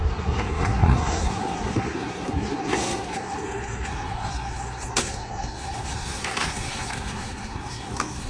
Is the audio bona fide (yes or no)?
no